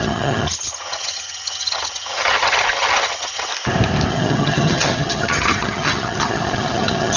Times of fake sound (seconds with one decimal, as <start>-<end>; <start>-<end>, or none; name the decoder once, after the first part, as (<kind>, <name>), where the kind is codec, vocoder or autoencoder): 0.0-3.5 (vocoder, HiFi-GAN); 4.1-7.2